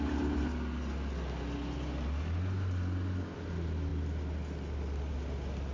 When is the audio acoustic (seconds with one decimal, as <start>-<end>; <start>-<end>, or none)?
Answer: 0.0-5.7